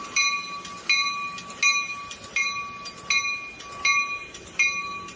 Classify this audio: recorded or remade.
recorded